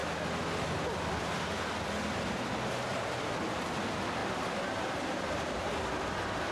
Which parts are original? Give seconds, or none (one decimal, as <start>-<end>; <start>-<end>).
0.0-6.5